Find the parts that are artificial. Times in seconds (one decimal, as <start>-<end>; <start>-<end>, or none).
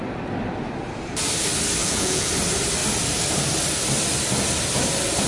1.8-2.3